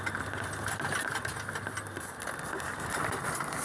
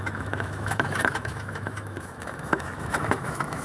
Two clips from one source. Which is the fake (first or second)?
second